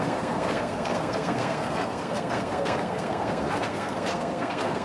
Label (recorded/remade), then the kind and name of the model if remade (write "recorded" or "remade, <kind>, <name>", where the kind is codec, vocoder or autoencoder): remade, codec, SNAC